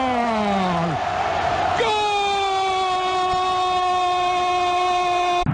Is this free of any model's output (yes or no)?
yes